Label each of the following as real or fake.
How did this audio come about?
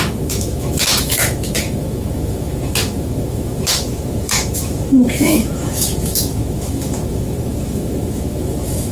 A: fake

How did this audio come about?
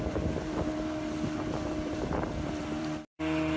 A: fake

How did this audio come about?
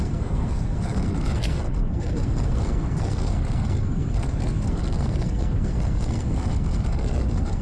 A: fake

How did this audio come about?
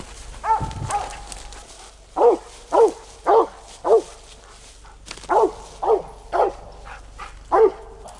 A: real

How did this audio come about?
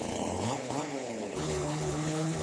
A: fake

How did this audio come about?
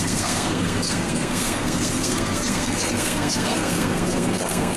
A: fake